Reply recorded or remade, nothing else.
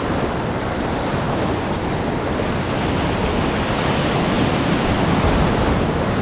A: recorded